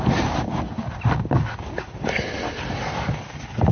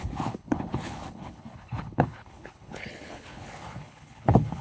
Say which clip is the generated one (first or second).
second